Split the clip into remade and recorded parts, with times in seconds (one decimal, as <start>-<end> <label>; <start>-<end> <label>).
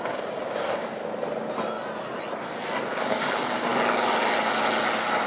0.0-1.0 remade; 1.0-2.9 recorded; 2.9-3.7 remade; 3.7-5.3 recorded